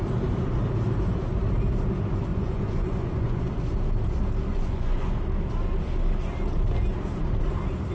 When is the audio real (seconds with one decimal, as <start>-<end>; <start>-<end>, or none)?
0.0-2.3; 3.5-4.5; 5.1-7.9